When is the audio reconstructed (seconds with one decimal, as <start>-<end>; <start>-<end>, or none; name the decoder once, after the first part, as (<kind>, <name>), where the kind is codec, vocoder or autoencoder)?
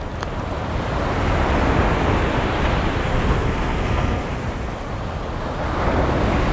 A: 3.1-4.2 (codec, SNAC)